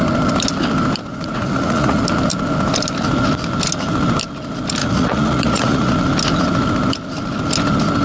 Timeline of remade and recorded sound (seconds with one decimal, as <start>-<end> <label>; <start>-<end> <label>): 0.0-1.1 recorded; 1.1-2.0 remade; 2.0-4.8 recorded; 4.8-5.9 remade; 5.9-8.0 recorded